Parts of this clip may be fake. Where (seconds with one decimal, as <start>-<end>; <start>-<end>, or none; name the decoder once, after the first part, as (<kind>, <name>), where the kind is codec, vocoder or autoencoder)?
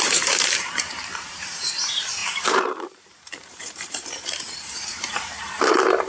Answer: 0.0-6.1 (vocoder, BigVGAN v2)